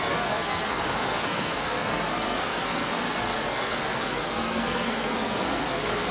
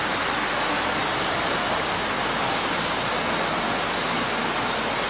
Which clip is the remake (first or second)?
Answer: first